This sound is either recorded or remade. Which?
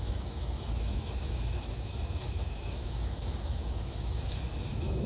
remade